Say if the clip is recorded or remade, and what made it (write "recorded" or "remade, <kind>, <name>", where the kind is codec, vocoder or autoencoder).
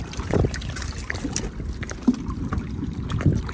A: recorded